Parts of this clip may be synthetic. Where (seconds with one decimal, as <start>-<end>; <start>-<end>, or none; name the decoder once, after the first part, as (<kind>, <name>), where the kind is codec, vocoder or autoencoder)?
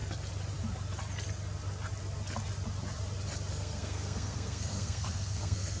3.5-5.8 (codec, SNAC)